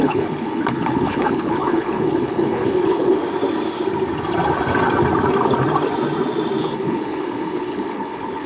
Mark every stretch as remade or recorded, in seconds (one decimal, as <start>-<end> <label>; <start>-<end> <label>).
0.0-3.2 remade; 3.2-6.6 recorded; 6.6-8.5 remade